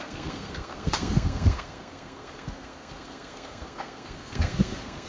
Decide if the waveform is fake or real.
fake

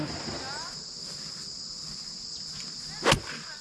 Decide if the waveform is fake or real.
real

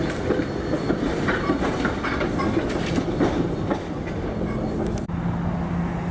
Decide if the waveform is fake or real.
real